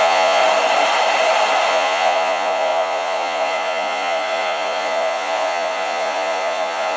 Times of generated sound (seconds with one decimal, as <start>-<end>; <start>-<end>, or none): 0.0-0.4; 1.7-7.0